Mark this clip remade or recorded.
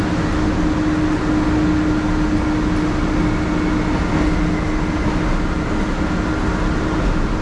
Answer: recorded